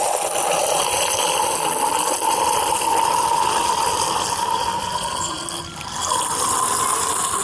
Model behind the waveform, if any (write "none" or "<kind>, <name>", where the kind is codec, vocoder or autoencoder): none